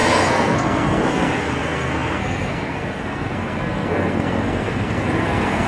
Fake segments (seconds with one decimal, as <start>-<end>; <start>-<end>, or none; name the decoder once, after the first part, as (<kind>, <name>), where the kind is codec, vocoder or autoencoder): 0.0-5.7 (codec, SNAC)